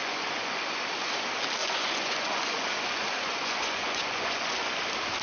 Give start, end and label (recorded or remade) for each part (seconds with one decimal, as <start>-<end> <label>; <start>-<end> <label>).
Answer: 0.0-0.8 remade; 0.8-1.6 recorded; 1.6-4.7 remade; 4.7-5.2 recorded